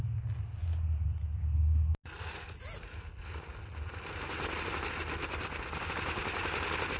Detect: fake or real real